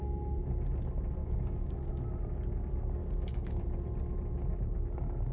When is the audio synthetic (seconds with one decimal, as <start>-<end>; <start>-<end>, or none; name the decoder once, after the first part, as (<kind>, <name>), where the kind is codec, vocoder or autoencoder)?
1.2-1.9 (codec, DAC); 3.0-3.6